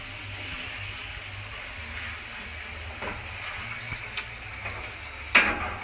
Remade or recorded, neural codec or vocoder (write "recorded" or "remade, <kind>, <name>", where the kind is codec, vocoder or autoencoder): recorded